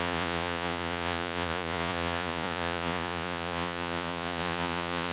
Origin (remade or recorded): remade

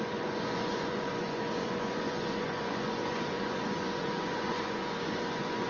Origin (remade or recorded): remade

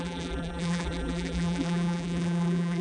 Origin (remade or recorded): remade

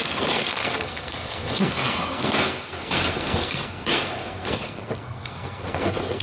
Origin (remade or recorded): remade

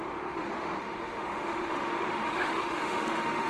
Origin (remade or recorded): remade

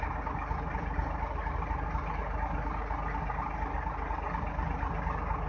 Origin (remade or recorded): recorded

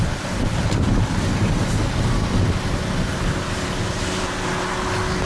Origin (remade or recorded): recorded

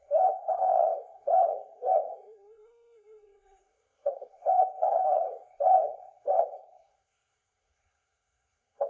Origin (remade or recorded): remade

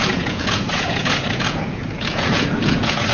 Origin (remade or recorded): remade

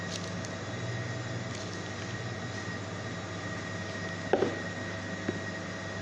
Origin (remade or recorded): recorded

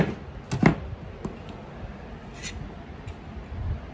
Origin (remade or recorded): recorded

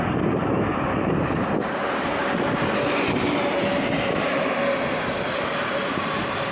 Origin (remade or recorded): remade